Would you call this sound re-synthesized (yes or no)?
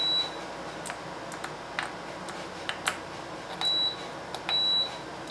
no